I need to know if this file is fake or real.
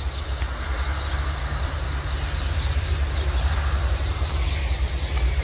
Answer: real